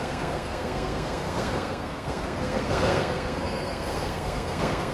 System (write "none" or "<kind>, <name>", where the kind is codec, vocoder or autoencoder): codec, SNAC